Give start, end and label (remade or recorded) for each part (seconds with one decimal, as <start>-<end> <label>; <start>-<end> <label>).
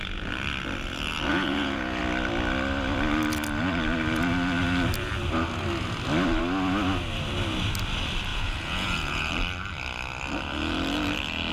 0.0-1.3 recorded; 1.3-2.0 remade; 2.0-8.3 recorded; 8.3-9.3 remade; 9.3-11.5 recorded